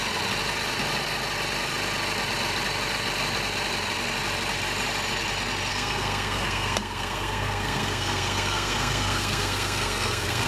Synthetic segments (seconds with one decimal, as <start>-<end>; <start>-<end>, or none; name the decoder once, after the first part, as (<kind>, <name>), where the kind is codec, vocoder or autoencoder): 5.7-10.5 (codec, SNAC)